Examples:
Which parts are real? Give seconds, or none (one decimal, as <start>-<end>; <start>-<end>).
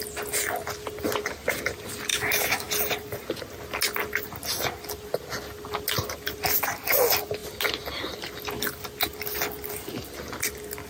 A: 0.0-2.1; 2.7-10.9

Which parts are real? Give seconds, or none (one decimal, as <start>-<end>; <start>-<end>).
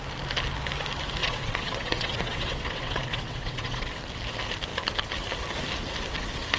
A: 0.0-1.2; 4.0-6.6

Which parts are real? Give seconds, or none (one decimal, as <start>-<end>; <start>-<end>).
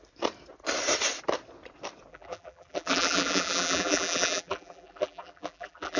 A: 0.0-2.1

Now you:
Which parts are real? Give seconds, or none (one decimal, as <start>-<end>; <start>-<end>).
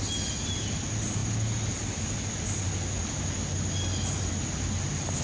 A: 0.0-5.2